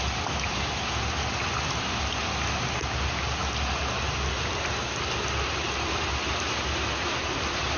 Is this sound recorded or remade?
recorded